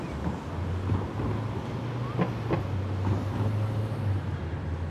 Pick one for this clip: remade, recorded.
recorded